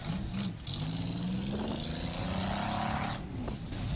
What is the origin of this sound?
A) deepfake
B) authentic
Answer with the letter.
B